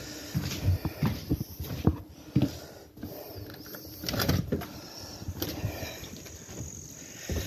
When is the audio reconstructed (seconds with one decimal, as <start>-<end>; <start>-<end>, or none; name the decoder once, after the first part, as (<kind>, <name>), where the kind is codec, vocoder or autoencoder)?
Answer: 0.0-7.5 (vocoder, BigVGAN v2)